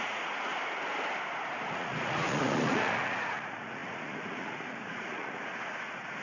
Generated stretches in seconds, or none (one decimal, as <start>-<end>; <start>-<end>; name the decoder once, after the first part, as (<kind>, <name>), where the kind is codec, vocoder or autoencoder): 0.0-0.5 (vocoder, Vocos); 1.7-6.2